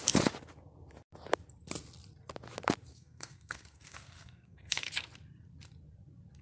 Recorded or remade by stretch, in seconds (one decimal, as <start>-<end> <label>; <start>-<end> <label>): 0.0-2.9 recorded; 2.9-4.9 remade; 4.9-6.4 recorded